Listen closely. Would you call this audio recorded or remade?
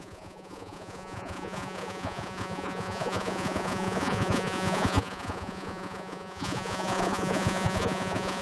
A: remade